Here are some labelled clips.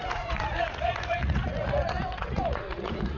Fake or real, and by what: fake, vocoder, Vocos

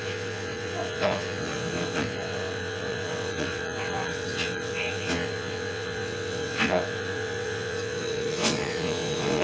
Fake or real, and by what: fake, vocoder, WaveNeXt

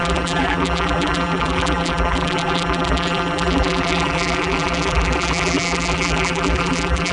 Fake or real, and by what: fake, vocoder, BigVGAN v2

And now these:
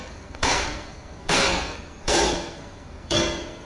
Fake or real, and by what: fake, codec, SNAC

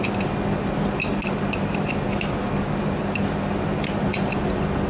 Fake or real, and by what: real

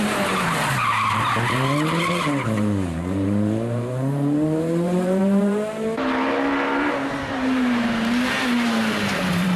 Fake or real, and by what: fake, vocoder, BigVGAN v2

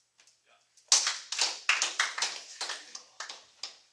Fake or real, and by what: real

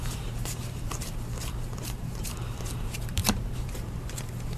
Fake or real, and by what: fake, vocoder, BigVGAN v2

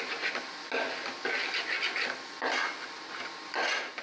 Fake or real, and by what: real